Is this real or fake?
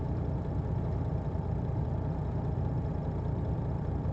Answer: real